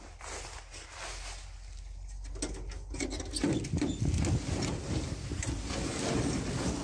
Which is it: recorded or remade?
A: recorded